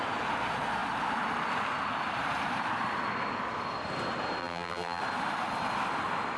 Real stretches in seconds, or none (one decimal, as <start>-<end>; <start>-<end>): 0.0-4.4; 5.0-6.4